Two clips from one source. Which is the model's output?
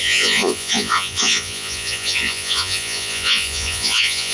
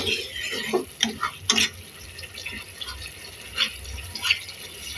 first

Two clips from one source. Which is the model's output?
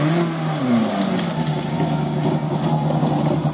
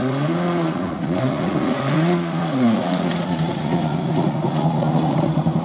second